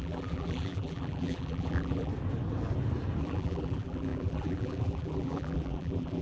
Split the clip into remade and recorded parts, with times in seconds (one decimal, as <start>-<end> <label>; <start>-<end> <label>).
0.0-2.1 remade; 2.1-3.2 recorded; 3.2-6.2 remade